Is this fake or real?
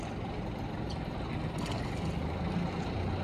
real